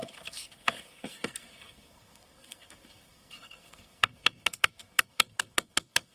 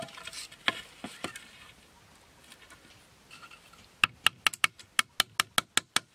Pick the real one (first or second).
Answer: second